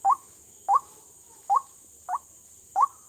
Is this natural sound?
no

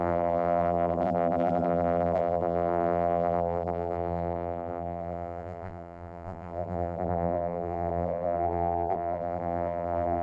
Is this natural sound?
no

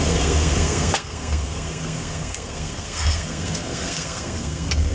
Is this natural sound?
no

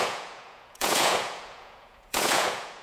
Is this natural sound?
no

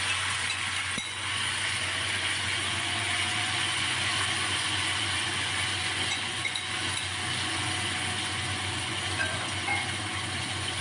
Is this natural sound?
no